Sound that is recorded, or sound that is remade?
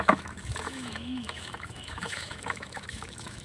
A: remade